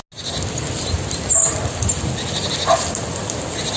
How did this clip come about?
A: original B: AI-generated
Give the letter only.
A